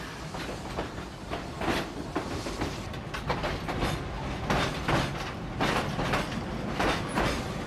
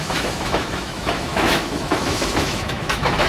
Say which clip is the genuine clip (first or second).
first